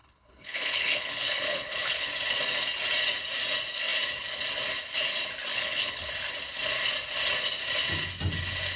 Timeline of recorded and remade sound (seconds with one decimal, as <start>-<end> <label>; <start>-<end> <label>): 0.0-2.1 remade; 2.1-5.5 recorded; 5.5-6.1 remade; 6.1-8.8 recorded